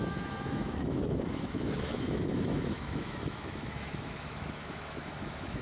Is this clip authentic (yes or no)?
no